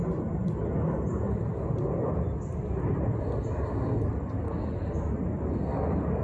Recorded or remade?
recorded